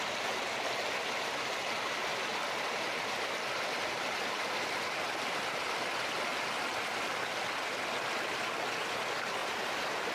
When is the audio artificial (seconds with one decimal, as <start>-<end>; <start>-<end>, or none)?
2.1-5.0